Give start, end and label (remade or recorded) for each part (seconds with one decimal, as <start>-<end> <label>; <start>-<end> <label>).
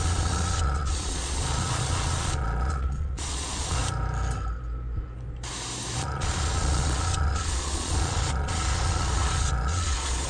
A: 0.0-3.8 remade; 3.8-6.0 recorded; 6.0-10.3 remade